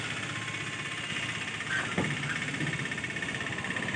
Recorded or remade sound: recorded